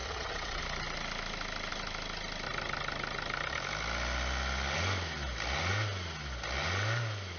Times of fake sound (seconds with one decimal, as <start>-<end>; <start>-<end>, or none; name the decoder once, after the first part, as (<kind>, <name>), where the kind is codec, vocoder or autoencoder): 0.0-0.6 (vocoder, WaveNeXt)